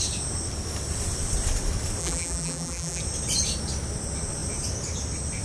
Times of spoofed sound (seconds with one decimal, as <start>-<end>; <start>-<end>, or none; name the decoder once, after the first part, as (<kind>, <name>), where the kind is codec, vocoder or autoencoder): 2.0-3.0 (vocoder, BigVGAN v2)